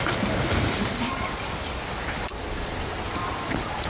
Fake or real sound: real